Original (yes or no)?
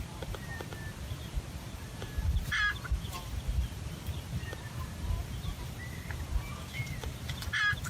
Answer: yes